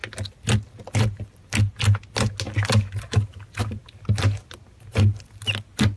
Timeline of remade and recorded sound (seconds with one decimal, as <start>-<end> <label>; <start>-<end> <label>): 0.0-6.0 recorded